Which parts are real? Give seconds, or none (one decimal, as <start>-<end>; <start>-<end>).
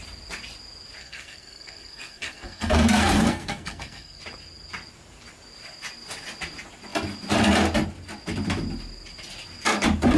0.0-1.0; 4.2-10.2